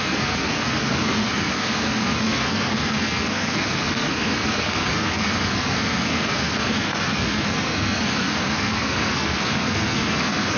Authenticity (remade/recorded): remade